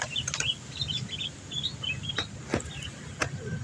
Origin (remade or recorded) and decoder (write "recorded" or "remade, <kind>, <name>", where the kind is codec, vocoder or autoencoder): recorded